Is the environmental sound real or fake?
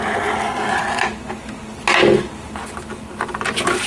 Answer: real